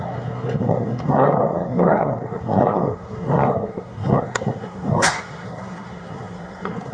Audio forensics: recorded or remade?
remade